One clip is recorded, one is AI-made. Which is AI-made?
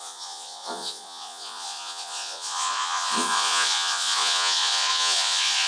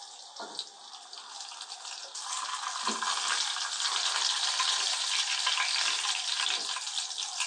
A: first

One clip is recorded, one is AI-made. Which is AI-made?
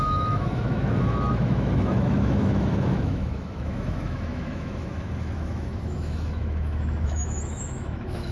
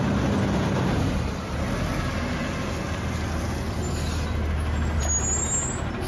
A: first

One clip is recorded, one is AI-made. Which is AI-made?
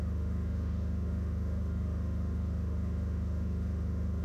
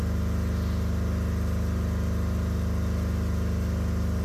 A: first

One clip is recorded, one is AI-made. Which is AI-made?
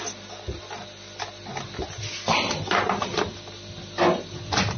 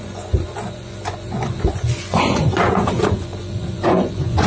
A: second